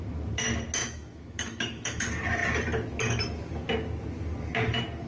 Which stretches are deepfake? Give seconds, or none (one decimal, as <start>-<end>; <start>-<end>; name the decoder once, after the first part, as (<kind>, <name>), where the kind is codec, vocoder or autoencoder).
0.8-2.0 (autoencoder, DAC-VAE)